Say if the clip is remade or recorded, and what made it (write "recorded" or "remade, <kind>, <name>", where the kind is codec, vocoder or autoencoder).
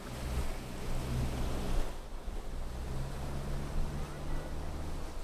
recorded